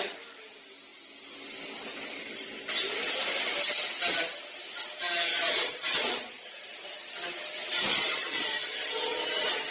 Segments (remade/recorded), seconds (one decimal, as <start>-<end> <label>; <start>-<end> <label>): 0.0-5.3 recorded; 5.3-7.1 remade; 7.1-7.9 recorded; 7.9-9.7 remade